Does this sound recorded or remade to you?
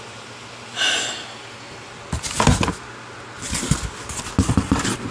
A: recorded